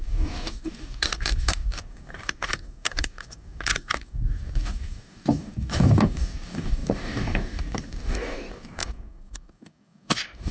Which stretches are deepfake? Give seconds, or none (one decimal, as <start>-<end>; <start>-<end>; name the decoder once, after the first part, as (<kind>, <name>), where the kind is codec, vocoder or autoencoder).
0.0-10.5 (codec, DAC)

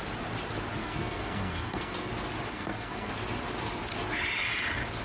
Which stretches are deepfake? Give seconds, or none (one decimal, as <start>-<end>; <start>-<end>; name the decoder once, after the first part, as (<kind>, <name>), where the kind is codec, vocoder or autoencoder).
0.8-2.1 (codec, SNAC); 2.5-3.1

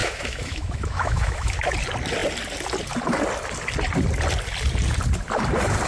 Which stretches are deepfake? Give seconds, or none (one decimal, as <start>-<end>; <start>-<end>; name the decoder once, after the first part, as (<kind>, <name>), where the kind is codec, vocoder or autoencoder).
0.0-1.7 (autoencoder, DAC-VAE)